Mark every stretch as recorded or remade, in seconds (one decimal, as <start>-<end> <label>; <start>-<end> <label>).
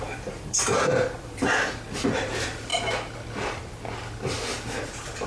0.0-2.7 remade; 2.7-4.8 recorded; 4.8-5.3 remade